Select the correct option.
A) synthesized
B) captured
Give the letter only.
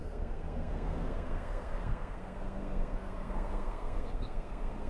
A